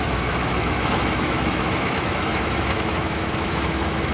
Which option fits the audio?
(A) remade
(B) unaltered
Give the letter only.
A